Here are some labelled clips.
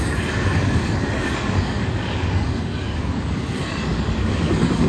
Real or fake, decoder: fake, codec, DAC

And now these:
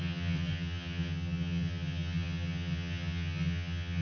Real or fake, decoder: fake, vocoder, HiFi-GAN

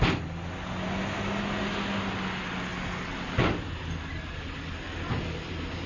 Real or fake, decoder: real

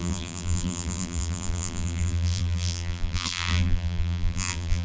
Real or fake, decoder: fake, vocoder, BigVGAN v2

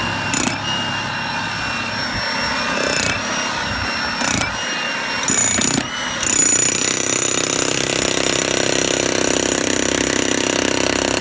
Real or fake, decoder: real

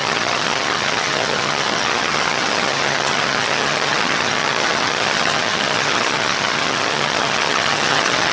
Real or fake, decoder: fake, vocoder, HiFi-GAN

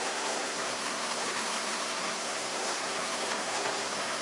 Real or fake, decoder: fake, codec, SNAC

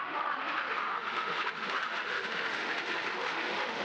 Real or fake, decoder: fake, autoencoder, DAC-VAE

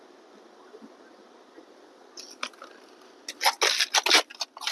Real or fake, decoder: real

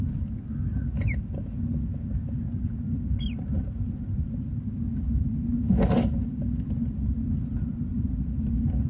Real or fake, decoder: real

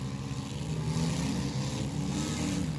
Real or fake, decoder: real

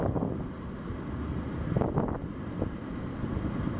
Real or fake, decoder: real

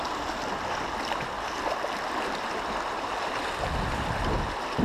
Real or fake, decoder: real